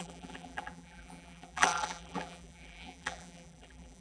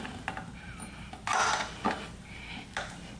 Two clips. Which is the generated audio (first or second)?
first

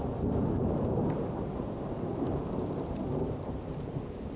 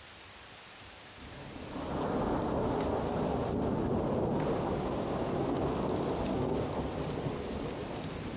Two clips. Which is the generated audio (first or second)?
first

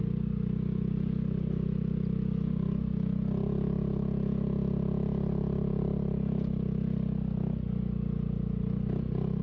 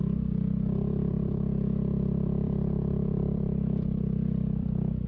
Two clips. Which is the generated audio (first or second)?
second